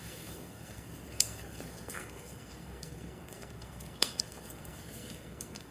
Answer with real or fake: fake